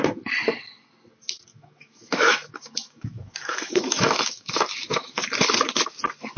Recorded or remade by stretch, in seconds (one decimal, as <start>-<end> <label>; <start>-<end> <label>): 0.0-1.5 recorded; 1.5-5.3 remade; 5.3-6.4 recorded